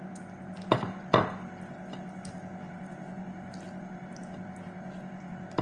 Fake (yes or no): no